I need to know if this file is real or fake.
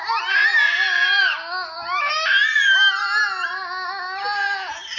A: real